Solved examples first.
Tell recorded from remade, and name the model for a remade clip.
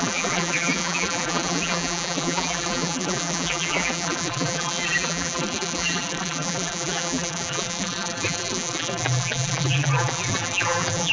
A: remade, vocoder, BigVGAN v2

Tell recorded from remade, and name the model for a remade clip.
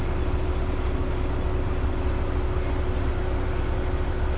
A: recorded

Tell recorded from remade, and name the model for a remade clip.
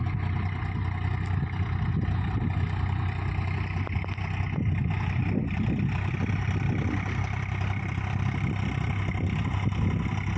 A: recorded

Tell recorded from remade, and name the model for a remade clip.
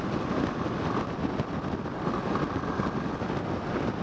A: recorded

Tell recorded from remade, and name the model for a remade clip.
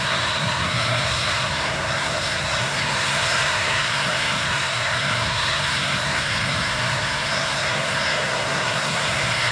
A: remade, codec, SNAC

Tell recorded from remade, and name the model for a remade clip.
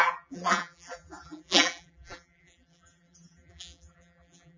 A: remade, vocoder, BigVGAN v2